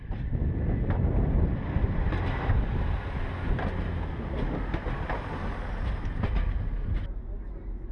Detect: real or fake real